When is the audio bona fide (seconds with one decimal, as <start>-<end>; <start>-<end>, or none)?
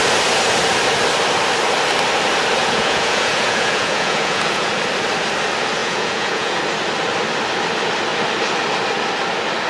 0.0-2.6; 4.7-5.8; 6.6-9.7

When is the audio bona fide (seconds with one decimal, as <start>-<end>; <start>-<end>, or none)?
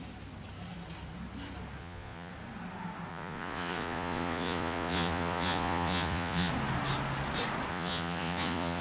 0.0-1.8; 2.3-3.1; 6.5-7.7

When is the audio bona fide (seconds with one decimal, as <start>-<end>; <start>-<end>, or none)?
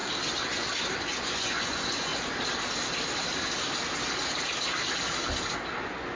0.0-1.2; 2.1-5.8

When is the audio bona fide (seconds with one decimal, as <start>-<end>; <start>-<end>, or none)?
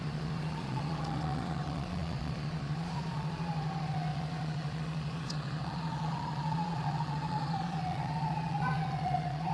none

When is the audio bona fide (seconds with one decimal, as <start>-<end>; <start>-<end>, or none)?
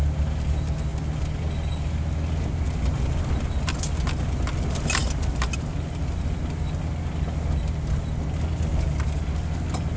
0.0-10.0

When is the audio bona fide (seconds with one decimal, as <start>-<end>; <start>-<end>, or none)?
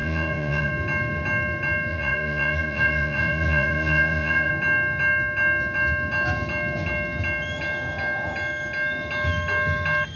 0.7-1.9; 4.5-10.2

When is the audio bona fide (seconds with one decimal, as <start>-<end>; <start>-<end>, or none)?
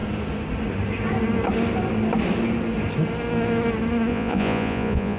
0.0-4.1